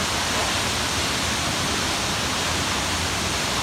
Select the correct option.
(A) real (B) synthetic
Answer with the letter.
A